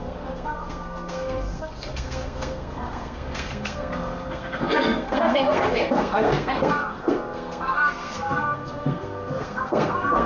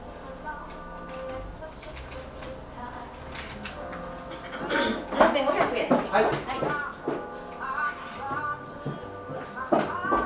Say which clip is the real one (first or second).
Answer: second